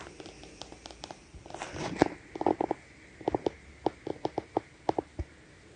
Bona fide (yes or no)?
yes